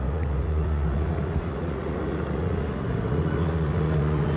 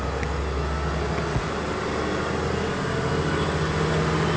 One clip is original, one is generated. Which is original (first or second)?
second